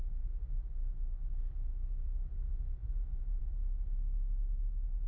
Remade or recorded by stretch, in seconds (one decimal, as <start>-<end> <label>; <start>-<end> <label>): 0.0-5.1 recorded